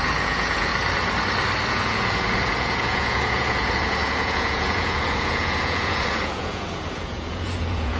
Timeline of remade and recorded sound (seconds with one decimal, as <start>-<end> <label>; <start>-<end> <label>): 0.0-0.7 remade; 0.7-1.7 recorded; 1.7-8.0 remade